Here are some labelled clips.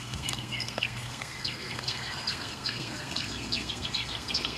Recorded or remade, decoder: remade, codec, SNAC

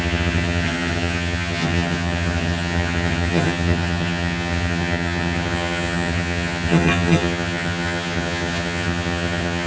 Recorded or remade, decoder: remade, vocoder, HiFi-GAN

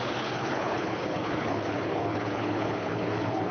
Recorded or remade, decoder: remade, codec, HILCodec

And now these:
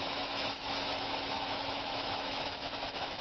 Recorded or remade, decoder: remade, autoencoder, DAC-VAE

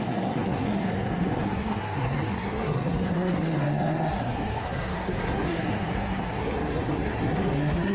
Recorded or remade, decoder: remade, codec, SNAC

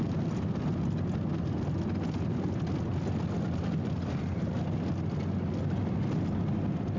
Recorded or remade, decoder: recorded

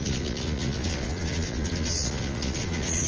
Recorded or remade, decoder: remade, vocoder, Vocos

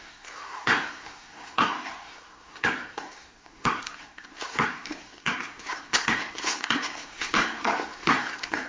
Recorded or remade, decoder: remade, codec, SNAC